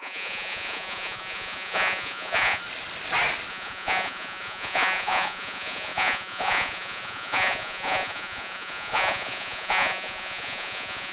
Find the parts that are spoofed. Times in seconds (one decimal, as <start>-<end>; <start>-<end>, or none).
0.0-2.6; 3.5-11.1